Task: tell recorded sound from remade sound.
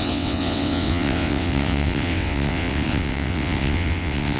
remade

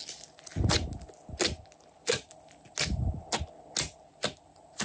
recorded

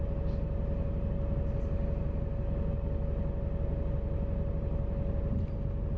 recorded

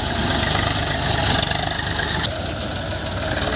recorded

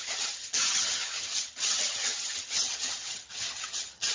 remade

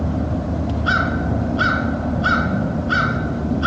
recorded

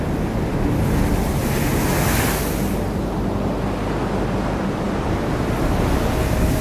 recorded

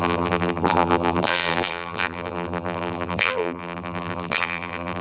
remade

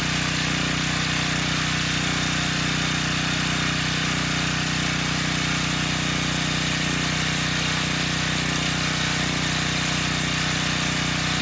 recorded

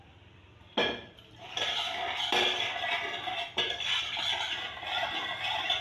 recorded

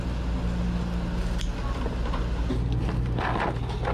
recorded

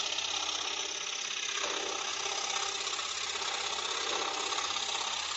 recorded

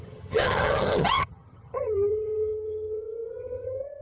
remade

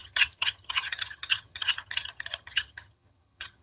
remade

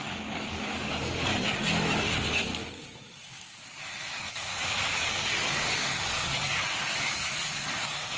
remade